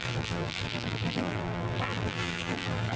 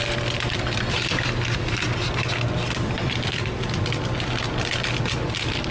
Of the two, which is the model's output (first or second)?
first